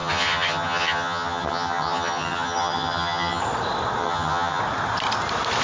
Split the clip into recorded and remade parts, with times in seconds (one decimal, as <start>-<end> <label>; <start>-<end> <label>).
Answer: 0.0-3.4 remade; 3.4-4.0 recorded; 4.0-4.6 remade; 4.6-5.6 recorded

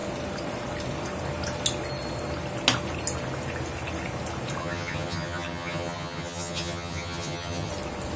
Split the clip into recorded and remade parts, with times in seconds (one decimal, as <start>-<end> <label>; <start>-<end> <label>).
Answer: 0.0-4.6 recorded; 4.6-7.7 remade; 7.7-8.2 recorded